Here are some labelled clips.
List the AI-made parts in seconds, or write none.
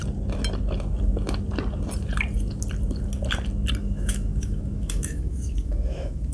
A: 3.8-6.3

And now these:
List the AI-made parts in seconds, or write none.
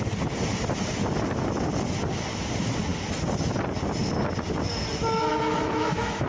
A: 5.3-6.3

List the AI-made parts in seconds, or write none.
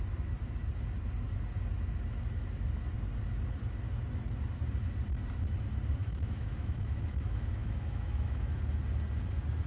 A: 6.0-8.6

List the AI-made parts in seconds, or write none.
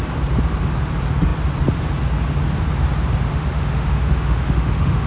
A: 3.3-5.1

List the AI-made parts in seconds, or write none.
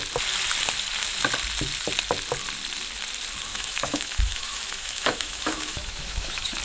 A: 3.5-6.6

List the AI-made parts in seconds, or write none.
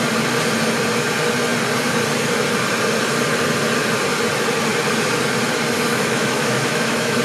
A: 5.9-7.2